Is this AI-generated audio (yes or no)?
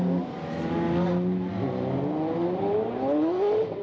no